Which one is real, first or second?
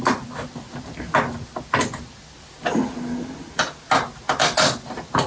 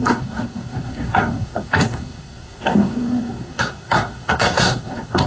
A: first